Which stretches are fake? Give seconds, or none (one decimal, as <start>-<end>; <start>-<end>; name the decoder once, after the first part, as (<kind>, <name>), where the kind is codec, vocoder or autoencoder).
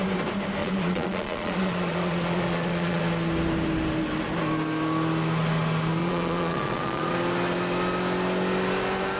0.6-3.0 (vocoder, Vocos); 6.0-7.1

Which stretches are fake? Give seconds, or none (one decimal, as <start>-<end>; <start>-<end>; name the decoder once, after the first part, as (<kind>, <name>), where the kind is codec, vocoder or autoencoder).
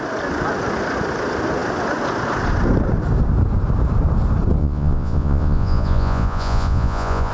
4.6-7.3 (vocoder, Vocos)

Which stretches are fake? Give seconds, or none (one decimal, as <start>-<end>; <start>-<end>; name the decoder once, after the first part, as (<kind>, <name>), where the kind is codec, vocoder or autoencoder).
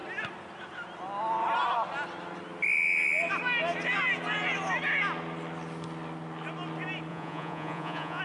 7.1-8.2 (vocoder, Vocos)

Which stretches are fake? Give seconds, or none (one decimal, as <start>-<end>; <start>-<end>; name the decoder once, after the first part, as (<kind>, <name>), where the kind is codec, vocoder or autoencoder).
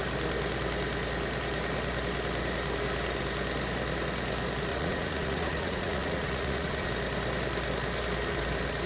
4.7-6.9 (vocoder, Vocos)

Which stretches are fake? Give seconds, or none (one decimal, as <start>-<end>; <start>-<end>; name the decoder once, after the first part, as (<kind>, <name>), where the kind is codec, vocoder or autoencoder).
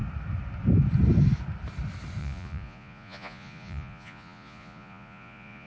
2.2-5.7 (vocoder, Vocos)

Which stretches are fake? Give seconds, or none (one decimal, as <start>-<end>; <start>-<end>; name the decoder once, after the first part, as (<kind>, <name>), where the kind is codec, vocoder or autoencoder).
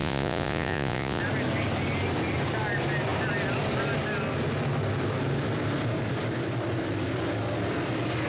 0.0-1.2 (vocoder, Vocos)